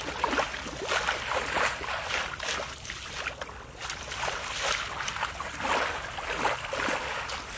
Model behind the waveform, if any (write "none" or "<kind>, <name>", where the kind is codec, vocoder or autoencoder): none